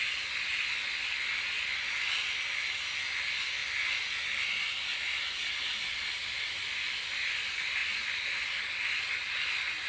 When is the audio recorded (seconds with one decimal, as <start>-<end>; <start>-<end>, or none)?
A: 0.0-9.9